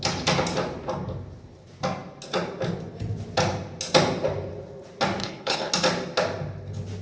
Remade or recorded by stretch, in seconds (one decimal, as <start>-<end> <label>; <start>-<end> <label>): 0.0-5.2 recorded; 5.2-5.7 remade; 5.7-7.0 recorded